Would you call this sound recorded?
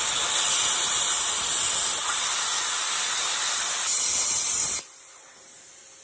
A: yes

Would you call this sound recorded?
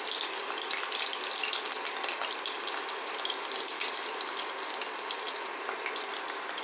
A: yes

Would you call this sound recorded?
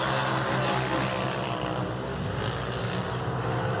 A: yes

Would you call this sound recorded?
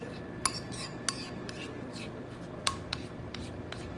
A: yes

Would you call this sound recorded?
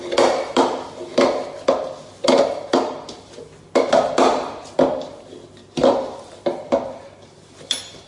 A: yes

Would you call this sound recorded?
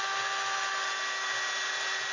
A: yes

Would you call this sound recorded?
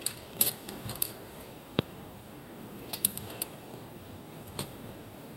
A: no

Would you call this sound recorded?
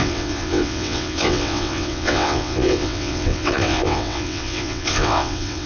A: no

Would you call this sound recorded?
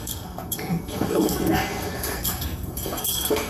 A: no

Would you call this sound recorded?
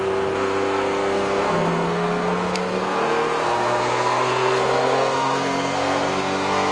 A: no